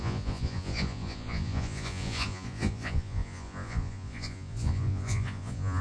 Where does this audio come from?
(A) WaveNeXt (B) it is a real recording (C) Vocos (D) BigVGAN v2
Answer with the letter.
C